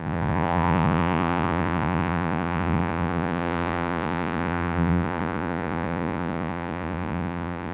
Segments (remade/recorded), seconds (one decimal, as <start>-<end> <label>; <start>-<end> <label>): 0.0-7.7 remade

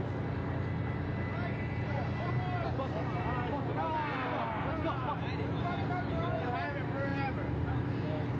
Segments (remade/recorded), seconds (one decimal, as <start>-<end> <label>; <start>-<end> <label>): 0.0-8.4 recorded

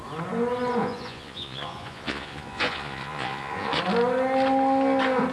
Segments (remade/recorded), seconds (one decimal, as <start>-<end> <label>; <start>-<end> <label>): 0.0-0.8 recorded; 0.8-3.8 remade; 3.8-5.3 recorded

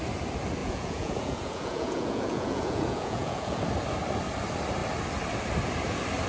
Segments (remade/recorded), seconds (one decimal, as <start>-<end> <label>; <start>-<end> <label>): 0.0-0.6 recorded; 0.6-3.6 remade; 3.6-6.3 recorded

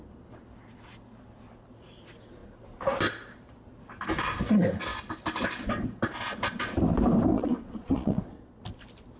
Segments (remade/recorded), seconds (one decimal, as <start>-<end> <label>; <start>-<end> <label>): 0.0-7.3 recorded; 7.3-8.6 remade; 8.6-9.2 recorded

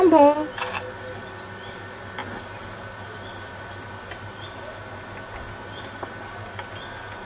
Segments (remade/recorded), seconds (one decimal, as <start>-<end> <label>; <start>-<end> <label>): 0.0-7.2 recorded

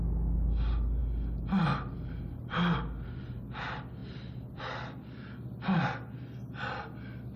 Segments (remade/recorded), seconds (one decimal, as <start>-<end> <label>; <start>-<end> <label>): 0.0-7.4 recorded